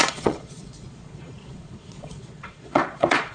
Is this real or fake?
fake